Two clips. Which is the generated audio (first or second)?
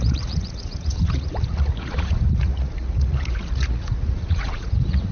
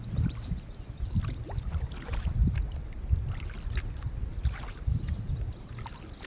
first